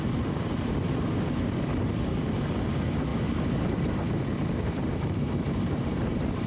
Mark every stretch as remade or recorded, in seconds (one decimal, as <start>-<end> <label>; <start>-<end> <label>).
0.0-3.1 recorded; 3.1-6.5 remade